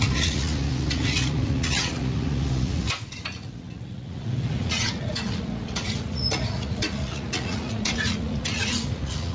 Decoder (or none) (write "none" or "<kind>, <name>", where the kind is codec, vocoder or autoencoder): vocoder, Vocos